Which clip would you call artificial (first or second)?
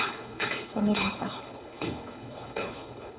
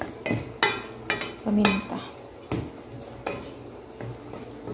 first